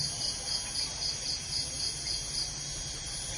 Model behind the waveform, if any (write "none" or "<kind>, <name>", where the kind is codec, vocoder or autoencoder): none